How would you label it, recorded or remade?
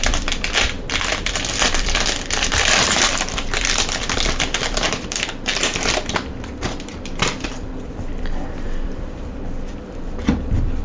remade